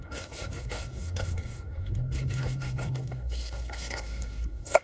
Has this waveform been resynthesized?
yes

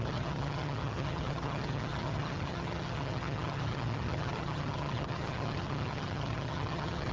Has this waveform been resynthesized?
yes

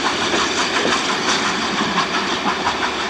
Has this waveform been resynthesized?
no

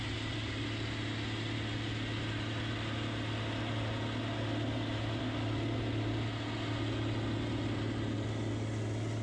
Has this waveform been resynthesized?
no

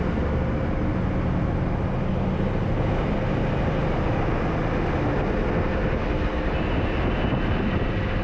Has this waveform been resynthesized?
no